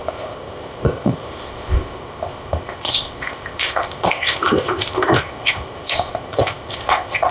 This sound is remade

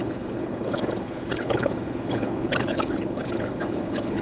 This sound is remade